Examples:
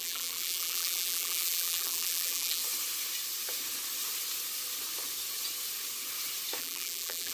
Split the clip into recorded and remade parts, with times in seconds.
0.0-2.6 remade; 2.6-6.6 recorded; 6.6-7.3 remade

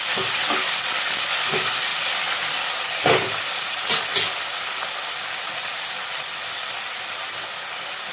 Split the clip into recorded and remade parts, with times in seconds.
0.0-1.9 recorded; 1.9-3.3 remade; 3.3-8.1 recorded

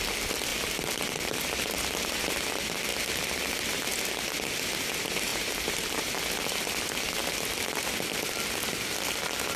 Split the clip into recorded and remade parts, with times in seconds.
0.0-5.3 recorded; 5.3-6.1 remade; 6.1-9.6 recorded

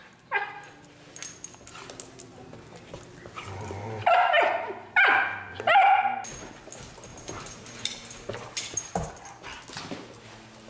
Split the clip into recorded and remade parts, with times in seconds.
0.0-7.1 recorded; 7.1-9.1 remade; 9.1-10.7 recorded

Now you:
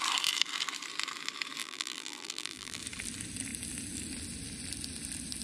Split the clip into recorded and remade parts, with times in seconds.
0.0-1.6 recorded; 1.6-2.8 remade; 2.8-5.4 recorded

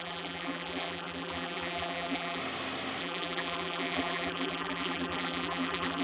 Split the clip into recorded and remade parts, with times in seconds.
0.0-2.4 remade; 2.4-3.0 recorded; 3.0-6.0 remade